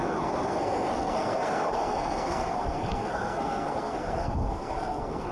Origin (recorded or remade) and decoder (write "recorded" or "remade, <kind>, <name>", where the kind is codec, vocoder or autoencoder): remade, codec, SNAC